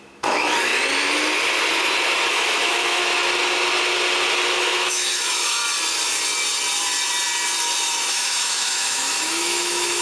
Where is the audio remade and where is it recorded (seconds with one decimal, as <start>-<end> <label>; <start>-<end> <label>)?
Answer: 0.0-0.7 remade; 0.7-2.3 recorded; 2.3-3.0 remade; 3.0-4.6 recorded; 4.6-5.6 remade; 5.6-8.1 recorded; 8.1-10.0 remade